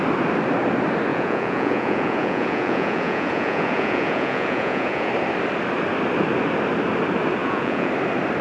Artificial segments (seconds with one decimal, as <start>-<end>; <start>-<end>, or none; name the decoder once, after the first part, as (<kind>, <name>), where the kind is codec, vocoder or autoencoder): 1.1-5.1 (vocoder, Vocos); 7.4-7.9